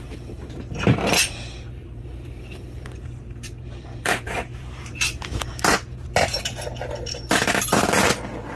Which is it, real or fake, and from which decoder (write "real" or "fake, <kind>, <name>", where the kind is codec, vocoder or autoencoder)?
fake, vocoder, BigVGAN v2